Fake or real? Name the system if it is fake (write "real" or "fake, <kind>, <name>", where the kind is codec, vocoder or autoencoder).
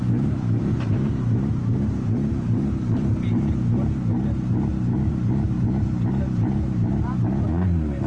fake, vocoder, BigVGAN v2